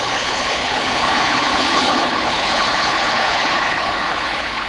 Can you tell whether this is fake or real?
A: fake